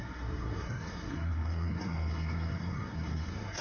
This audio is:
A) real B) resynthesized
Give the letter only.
B